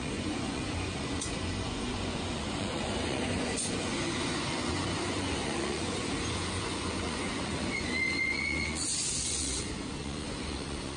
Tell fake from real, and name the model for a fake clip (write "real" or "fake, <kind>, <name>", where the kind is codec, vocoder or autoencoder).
fake, vocoder, Vocos